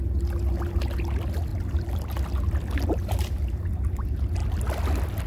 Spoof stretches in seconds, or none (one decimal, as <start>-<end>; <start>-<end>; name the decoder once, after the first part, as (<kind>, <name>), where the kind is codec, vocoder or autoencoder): 1.5-2.8 (vocoder, BigVGAN v2)